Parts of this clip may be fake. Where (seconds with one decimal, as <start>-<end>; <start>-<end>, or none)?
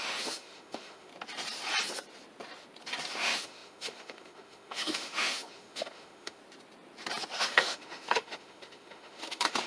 0.0-1.1; 3.1-6.4; 7.3-9.7